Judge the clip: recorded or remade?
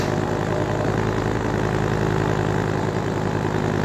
recorded